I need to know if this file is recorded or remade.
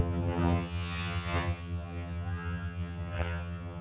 remade